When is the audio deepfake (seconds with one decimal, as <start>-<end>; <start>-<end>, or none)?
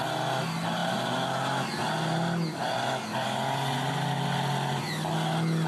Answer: none